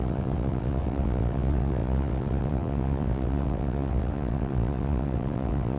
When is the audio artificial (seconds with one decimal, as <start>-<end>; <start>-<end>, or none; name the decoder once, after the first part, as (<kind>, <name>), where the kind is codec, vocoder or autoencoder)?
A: 0.0-5.8 (vocoder, WaveNeXt)